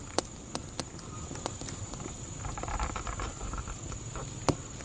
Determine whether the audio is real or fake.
real